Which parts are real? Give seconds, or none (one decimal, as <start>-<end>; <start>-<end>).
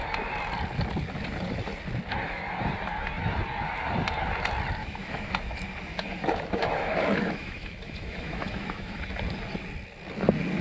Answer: 0.0-4.8; 5.3-5.9; 9.0-10.6